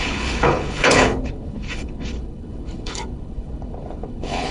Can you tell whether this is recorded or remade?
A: remade